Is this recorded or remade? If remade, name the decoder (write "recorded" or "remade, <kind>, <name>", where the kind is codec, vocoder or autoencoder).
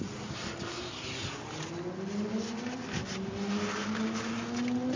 recorded